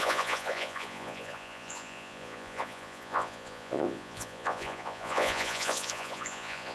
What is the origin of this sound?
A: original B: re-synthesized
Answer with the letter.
B